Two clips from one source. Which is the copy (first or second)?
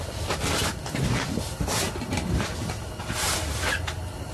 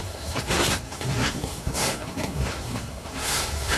second